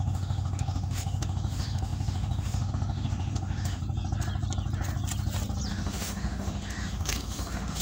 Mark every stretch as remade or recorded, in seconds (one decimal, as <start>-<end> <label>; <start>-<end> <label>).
0.0-3.8 remade; 3.8-5.7 recorded; 5.7-7.8 remade